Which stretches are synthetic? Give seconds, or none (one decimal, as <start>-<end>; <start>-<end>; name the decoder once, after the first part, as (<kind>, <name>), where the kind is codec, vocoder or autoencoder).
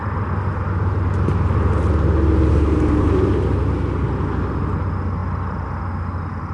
none